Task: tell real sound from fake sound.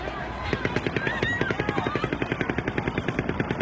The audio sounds real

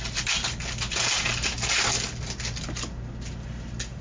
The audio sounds real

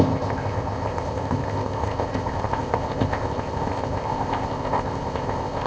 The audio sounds fake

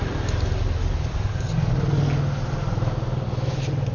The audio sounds real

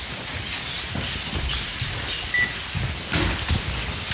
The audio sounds real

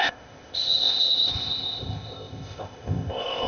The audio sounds fake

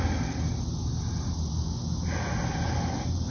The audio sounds real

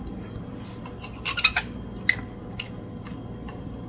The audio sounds real